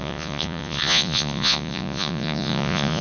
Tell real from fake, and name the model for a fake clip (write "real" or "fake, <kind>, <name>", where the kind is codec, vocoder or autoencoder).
fake, vocoder, Vocos